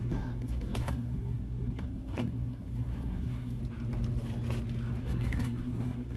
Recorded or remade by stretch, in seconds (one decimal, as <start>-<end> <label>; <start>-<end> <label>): 0.0-3.6 remade; 3.6-5.0 recorded; 5.0-6.2 remade